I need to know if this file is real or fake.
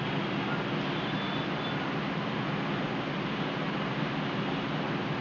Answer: real